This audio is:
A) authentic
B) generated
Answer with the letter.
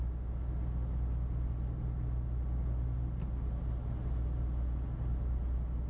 A